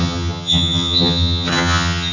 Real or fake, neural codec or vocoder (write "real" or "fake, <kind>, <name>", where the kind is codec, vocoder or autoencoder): fake, vocoder, HiFi-GAN